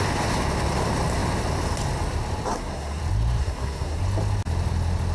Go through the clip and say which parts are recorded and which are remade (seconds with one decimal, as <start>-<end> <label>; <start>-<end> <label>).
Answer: 0.0-2.5 recorded; 2.5-3.0 remade; 3.0-3.4 recorded; 3.4-4.0 remade; 4.0-5.1 recorded